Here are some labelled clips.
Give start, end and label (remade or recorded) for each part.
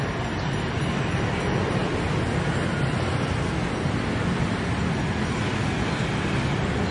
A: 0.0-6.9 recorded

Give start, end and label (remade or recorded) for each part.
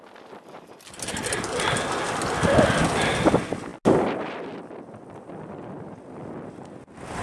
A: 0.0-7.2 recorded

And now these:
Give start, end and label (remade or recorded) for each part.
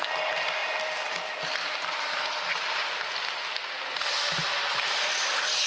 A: 0.0-5.7 recorded